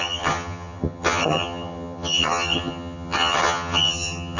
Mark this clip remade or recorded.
remade